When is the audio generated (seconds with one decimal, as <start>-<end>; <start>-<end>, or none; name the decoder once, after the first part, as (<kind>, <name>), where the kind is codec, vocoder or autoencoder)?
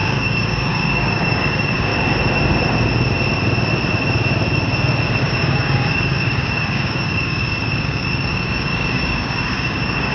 0.0-1.9 (codec, DAC); 5.2-10.1